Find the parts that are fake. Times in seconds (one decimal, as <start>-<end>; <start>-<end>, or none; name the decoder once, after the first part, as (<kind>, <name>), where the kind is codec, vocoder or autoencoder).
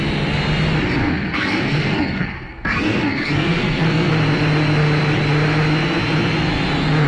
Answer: 1.0-4.1 (codec, SNAC)